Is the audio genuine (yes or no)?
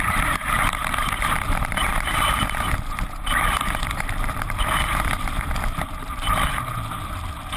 no